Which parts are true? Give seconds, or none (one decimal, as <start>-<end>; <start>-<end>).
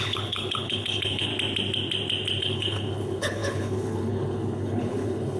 1.3-2.4